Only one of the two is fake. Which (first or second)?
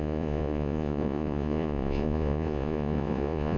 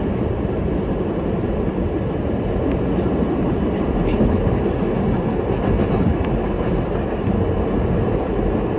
first